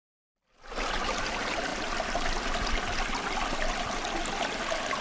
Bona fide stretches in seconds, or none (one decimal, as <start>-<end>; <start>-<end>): 0.0-5.0